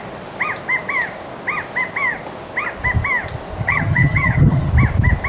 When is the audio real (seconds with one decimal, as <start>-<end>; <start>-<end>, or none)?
0.0-3.6; 4.7-5.3